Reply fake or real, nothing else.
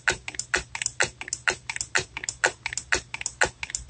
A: real